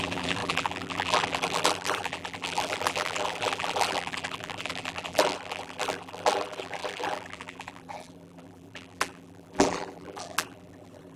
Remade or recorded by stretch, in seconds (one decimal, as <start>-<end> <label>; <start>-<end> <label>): 0.0-11.2 remade